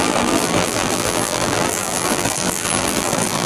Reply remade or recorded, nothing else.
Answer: remade